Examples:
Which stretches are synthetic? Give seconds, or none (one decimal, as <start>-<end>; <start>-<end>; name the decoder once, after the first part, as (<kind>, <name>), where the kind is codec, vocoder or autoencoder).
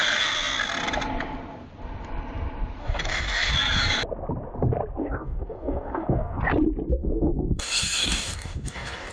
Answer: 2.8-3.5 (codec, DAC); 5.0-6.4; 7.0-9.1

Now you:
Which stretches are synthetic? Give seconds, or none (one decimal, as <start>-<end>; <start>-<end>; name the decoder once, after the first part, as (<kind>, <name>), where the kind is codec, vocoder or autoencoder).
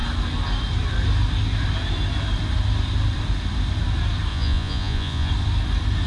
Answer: 4.3-5.3 (vocoder, Vocos)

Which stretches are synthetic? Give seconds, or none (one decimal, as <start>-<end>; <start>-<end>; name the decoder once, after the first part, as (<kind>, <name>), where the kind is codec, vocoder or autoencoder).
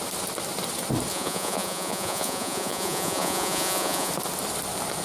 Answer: 1.1-4.1 (vocoder, Vocos)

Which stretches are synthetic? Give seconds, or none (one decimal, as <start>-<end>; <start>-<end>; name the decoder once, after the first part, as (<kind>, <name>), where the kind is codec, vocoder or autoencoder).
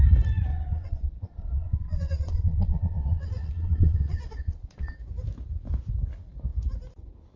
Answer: 0.5-4.9 (vocoder, Vocos)